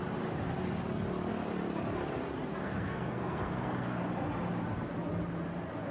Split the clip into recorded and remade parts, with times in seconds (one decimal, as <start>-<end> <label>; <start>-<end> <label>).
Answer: 0.0-2.6 recorded; 2.6-4.0 remade; 4.0-5.9 recorded